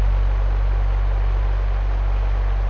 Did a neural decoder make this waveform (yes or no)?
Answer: no